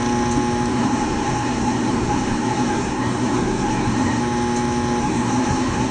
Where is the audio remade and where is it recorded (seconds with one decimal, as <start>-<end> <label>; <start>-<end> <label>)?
0.0-0.7 recorded; 0.7-4.2 remade; 4.2-5.0 recorded; 5.0-5.9 remade